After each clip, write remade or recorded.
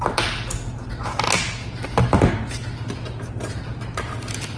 recorded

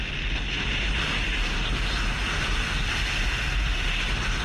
recorded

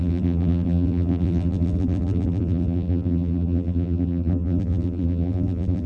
remade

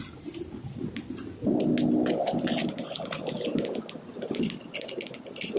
recorded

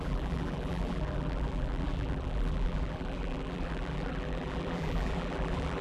remade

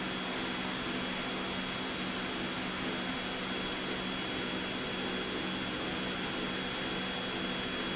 recorded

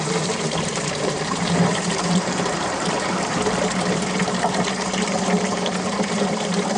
remade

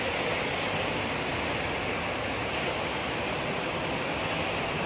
recorded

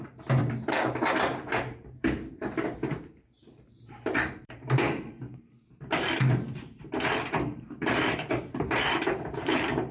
remade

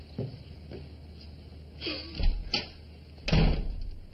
recorded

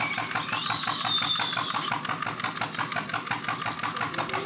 recorded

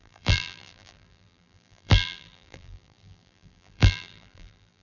remade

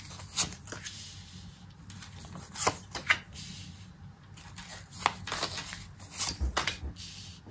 recorded